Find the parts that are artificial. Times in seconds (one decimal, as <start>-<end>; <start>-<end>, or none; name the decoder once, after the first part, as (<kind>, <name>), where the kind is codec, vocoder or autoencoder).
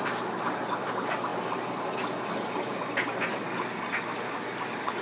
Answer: none